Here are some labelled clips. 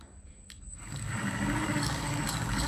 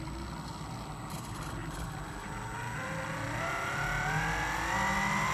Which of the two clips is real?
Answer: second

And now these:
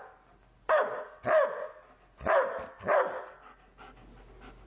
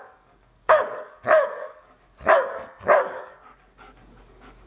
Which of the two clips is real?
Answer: first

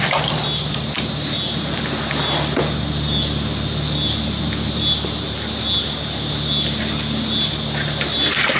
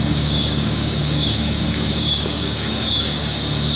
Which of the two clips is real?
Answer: first